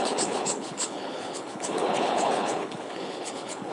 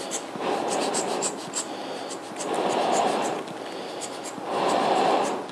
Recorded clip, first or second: second